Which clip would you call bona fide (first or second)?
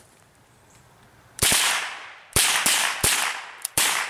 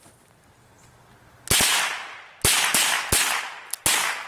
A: second